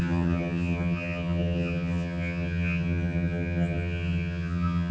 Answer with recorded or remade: remade